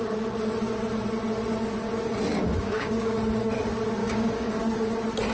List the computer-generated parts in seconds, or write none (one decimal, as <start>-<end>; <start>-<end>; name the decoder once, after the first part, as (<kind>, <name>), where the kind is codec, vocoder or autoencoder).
2.3-3.2 (codec, DAC); 4.0-4.6